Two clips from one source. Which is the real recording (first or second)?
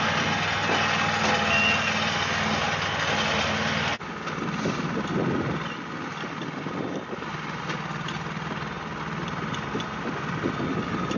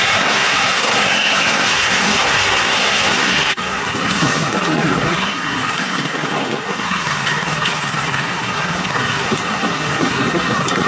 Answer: first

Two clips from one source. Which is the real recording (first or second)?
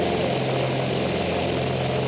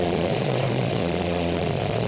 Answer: first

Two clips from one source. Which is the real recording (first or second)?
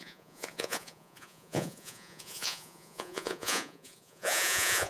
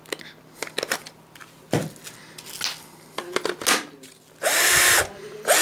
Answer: second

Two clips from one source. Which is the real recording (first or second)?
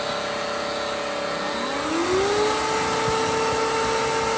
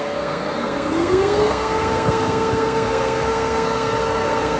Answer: first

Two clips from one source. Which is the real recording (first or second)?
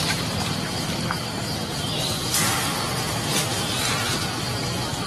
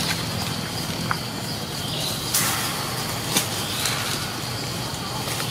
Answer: second